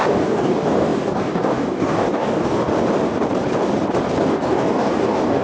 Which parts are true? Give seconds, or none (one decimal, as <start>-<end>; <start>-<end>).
2.7-4.2